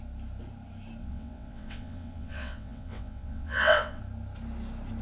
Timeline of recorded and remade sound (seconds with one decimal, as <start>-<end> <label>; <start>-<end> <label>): 0.0-1.0 recorded; 1.0-4.0 remade; 4.0-5.0 recorded